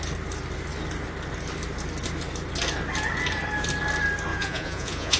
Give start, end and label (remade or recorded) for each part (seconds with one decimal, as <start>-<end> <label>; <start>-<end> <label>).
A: 0.0-4.3 recorded; 4.3-5.2 remade